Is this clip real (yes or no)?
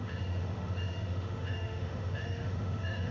no